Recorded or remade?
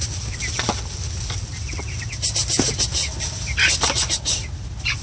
recorded